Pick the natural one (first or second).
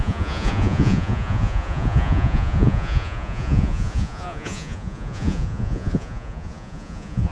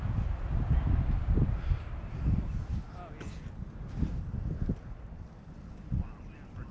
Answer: second